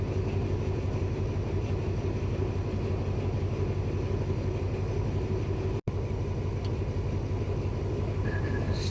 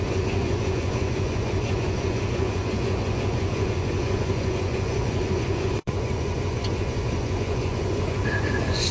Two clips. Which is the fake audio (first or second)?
second